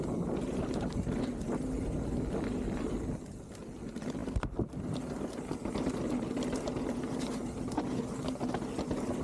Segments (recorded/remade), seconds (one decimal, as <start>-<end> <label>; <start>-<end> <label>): 0.0-9.2 recorded